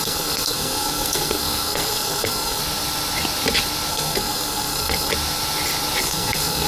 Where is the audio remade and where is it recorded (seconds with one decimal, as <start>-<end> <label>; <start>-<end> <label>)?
0.0-2.6 remade; 2.6-3.9 recorded; 3.9-5.1 remade; 5.1-6.0 recorded; 6.0-6.7 remade